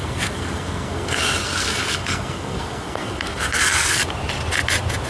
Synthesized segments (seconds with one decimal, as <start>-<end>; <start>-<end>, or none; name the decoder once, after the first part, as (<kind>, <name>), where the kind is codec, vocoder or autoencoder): 0.0-4.0 (codec, SNAC)